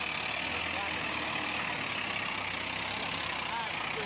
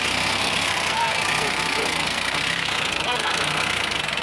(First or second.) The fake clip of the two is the second